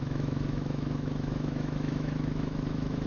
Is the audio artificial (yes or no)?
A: yes